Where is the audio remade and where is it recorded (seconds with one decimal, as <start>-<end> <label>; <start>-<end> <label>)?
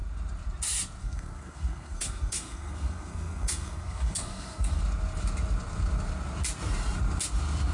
0.0-1.0 recorded; 1.0-4.8 remade; 4.8-7.7 recorded